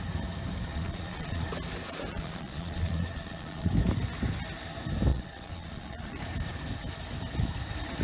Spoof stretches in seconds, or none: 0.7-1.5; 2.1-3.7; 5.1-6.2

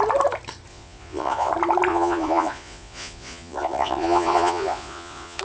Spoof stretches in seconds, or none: 0.7-1.5; 1.9-5.4

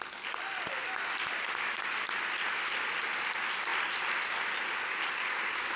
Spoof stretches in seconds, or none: none

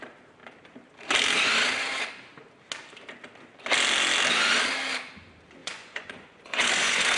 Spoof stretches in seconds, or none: 5.6-7.2